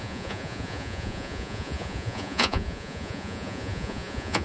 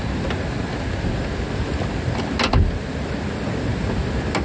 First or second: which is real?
second